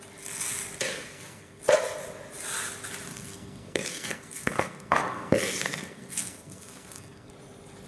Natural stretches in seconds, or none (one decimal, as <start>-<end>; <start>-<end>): 0.0-0.9; 1.6-3.1; 7.3-7.9